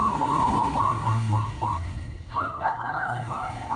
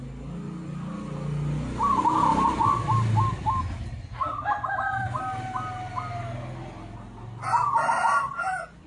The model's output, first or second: first